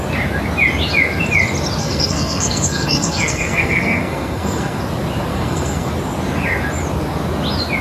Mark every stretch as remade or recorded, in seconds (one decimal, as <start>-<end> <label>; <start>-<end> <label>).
0.0-1.8 recorded; 1.8-4.8 remade; 4.8-5.3 recorded; 5.3-5.9 remade; 5.9-7.8 recorded